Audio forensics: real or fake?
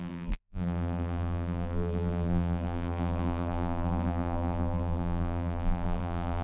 fake